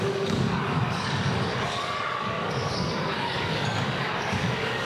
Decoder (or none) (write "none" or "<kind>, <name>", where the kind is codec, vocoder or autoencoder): codec, DAC